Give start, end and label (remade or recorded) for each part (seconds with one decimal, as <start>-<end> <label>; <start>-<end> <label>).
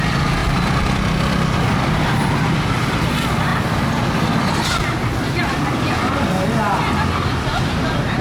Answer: 0.0-0.4 recorded; 0.4-1.9 remade; 1.9-7.3 recorded; 7.3-8.2 remade